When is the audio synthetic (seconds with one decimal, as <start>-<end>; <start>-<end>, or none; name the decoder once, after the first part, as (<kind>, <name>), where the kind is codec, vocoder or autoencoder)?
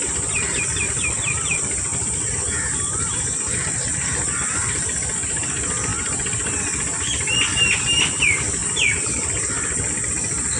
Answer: 0.0-8.6 (vocoder, BigVGAN v2)